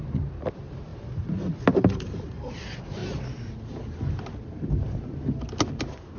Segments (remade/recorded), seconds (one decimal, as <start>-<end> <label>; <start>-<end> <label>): 0.0-0.9 recorded; 0.9-2.5 remade; 2.5-6.2 recorded